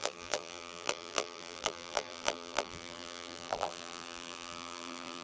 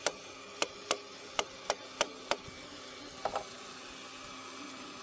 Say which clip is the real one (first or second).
second